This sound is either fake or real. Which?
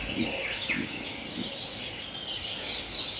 real